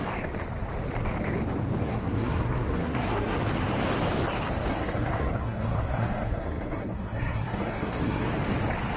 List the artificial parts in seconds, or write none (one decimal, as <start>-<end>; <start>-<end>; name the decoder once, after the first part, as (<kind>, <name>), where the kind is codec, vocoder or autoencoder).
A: 1.8-3.4 (codec, SNAC); 4.7-8.3